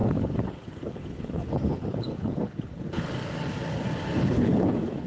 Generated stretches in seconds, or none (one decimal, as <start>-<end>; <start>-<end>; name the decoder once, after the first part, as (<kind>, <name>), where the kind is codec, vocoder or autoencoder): 0.0-3.1 (codec, HILCodec); 4.2-5.1

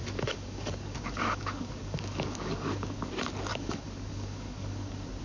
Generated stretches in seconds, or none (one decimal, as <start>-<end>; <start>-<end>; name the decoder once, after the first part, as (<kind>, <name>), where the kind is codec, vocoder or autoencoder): 0.0-3.1 (codec, DAC); 3.5-5.2

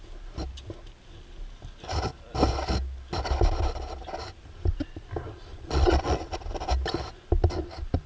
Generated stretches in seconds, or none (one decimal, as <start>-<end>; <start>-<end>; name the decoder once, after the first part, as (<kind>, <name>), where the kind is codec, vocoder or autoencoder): 5.5-6.4 (vocoder, Vocos)

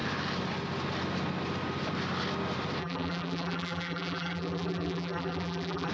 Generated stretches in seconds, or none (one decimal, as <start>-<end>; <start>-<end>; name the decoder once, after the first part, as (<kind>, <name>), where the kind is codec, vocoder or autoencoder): 2.8-5.9 (vocoder, BigVGAN v2)

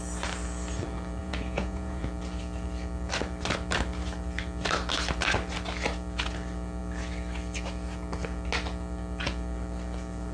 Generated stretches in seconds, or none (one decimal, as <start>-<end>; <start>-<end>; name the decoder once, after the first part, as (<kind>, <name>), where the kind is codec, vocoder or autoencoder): 1.2-2.0 (vocoder, Vocos)

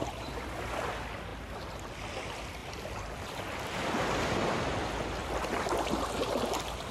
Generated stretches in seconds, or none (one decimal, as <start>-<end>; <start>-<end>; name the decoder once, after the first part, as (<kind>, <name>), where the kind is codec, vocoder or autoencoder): 0.0-0.6 (vocoder, BigVGAN v2); 2.6-4.6; 5.2-5.9

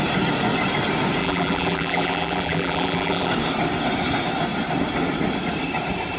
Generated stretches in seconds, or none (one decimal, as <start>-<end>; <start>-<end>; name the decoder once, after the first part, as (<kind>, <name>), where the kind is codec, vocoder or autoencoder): 1.2-3.3 (vocoder, BigVGAN v2)

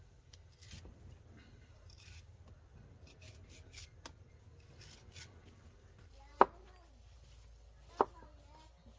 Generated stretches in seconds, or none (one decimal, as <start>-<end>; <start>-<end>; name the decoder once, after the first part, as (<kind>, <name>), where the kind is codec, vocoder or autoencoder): none